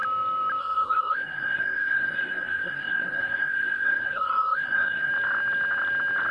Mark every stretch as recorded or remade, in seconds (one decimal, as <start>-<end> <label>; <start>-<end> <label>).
0.0-0.6 recorded; 0.6-5.1 remade; 5.1-6.3 recorded